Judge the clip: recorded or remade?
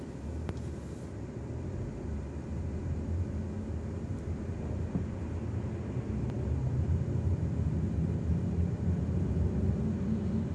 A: recorded